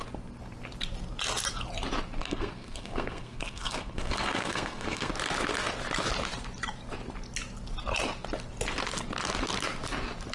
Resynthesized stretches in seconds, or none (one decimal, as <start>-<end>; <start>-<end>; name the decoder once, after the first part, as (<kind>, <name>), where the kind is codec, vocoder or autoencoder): 2.2-5.1 (codec, SNAC)